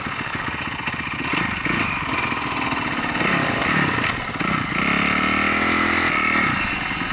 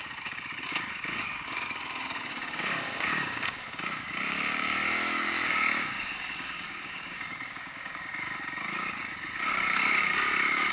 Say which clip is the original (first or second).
first